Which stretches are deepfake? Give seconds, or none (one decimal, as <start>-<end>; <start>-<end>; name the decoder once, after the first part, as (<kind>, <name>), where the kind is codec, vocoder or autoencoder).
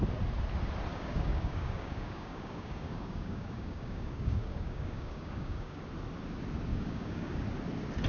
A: 0.9-5.8 (codec, DAC); 6.7-7.4